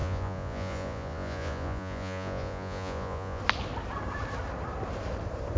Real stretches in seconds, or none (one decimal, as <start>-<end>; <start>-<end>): 3.4-5.6